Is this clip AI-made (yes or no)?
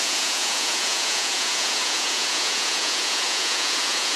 yes